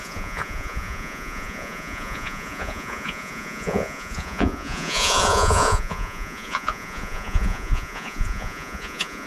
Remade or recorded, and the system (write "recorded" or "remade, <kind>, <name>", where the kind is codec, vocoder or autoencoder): remade, vocoder, Vocos